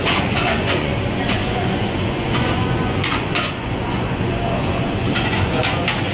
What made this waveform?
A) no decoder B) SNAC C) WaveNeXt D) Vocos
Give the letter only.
D